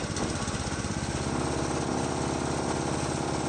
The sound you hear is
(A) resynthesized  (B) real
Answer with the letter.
B